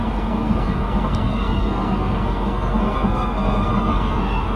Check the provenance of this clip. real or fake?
fake